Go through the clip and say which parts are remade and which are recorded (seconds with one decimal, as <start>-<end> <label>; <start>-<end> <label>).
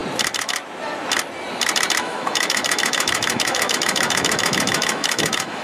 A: 0.0-2.0 recorded; 2.0-5.6 remade